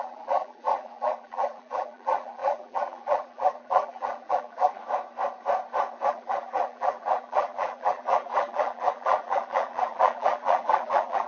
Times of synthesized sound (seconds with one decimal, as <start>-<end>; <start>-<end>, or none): 0.0-4.8; 6.1-11.3